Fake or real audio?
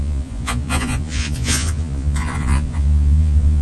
fake